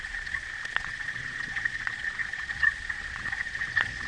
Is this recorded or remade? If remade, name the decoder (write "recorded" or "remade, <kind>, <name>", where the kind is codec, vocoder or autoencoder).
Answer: remade, vocoder, Vocos